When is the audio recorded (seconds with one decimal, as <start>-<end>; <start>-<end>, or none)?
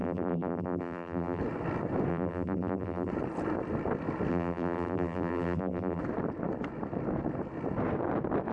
1.4-2.1; 3.1-4.3; 6.0-8.5